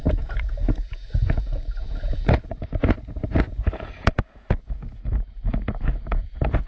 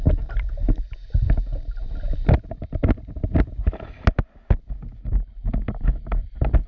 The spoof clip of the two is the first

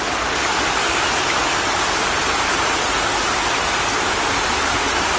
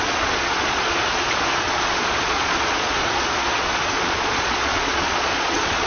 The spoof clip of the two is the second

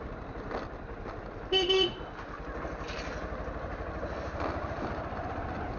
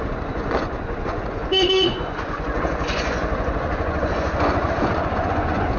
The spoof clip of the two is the second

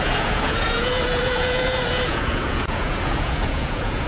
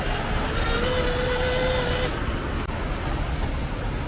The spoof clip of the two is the first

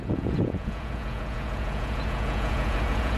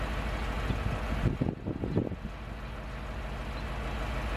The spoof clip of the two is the first